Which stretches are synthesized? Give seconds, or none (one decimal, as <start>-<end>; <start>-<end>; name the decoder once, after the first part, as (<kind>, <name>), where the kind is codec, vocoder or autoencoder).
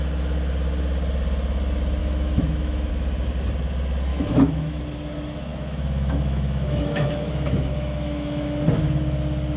2.0-2.9 (autoencoder, DAC-VAE); 4.1-4.8; 5.5-8.6